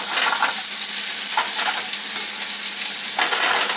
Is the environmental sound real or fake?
real